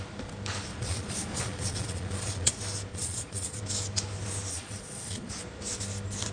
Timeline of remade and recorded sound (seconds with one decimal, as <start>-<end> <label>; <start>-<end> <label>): 0.0-0.7 recorded; 0.7-2.5 remade; 2.5-2.9 recorded; 2.9-3.6 remade; 3.6-4.5 recorded; 4.5-5.3 remade; 5.3-6.3 recorded